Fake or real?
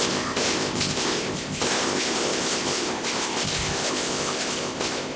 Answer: fake